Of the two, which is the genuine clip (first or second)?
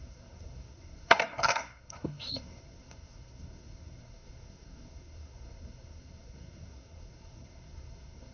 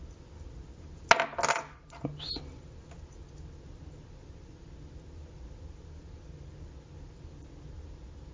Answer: second